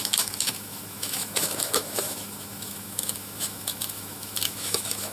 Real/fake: fake